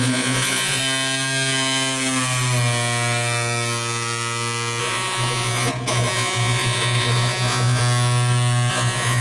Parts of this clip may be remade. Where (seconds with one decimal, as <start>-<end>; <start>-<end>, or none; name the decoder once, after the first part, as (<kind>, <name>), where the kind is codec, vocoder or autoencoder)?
0.0-0.8 (vocoder, Vocos); 4.8-7.8; 8.7-9.2